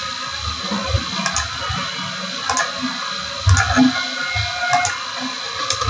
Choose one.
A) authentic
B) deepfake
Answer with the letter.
A